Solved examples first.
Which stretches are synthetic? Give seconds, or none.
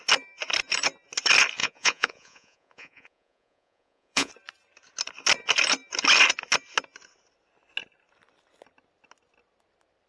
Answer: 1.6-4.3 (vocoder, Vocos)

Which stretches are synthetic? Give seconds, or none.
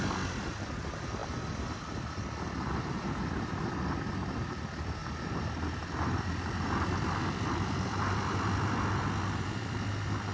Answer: 0.0-5.0 (vocoder, BigVGAN v2); 5.8-10.3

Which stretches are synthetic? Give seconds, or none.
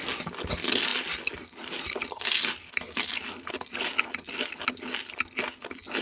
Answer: none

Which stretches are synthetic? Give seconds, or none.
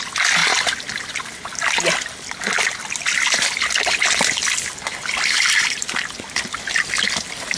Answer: none